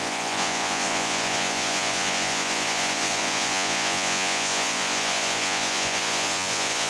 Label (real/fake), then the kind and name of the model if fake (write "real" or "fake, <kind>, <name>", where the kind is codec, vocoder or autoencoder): fake, vocoder, Vocos